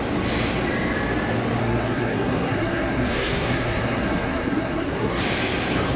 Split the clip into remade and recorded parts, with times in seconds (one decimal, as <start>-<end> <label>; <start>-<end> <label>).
0.0-1.6 recorded; 1.6-5.2 remade; 5.2-6.0 recorded